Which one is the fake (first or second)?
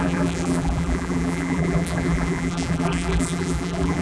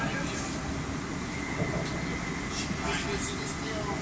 first